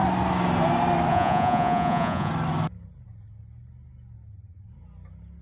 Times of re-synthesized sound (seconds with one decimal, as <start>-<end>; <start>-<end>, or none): 1.1-2.3